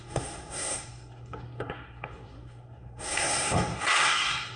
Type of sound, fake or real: fake